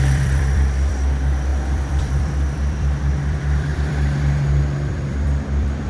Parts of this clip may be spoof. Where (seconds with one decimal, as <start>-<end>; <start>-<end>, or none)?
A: 0.0-5.9